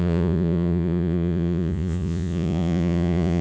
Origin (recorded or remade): remade